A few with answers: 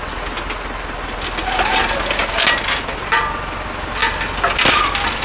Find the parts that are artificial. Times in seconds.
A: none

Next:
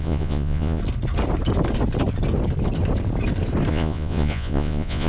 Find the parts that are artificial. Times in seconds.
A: 0.0-0.8 (vocoder, Vocos); 3.7-5.1

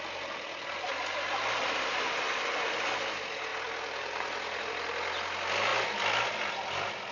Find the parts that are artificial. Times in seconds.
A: none